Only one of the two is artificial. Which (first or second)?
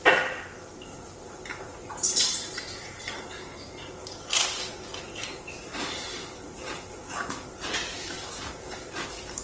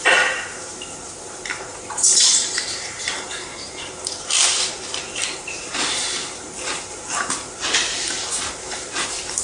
second